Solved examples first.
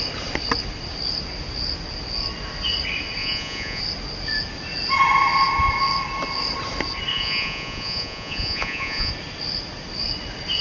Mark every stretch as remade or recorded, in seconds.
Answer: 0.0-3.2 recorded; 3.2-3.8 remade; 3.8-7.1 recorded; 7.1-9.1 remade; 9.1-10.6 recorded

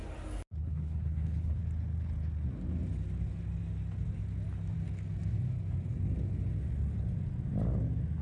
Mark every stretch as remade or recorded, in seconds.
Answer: 0.0-0.6 recorded; 0.6-1.6 remade; 1.6-8.2 recorded